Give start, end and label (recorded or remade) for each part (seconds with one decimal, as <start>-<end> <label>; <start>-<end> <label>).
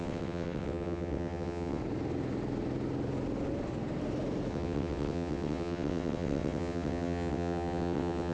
0.0-1.8 remade; 1.8-4.5 recorded; 4.5-8.3 remade